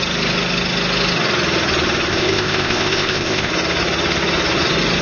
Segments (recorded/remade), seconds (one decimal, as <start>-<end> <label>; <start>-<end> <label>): 0.0-2.1 recorded; 2.1-3.5 remade; 3.5-5.0 recorded